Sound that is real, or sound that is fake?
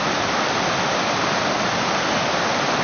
real